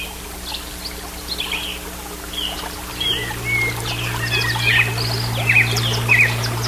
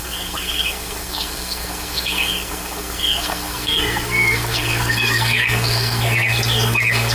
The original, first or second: first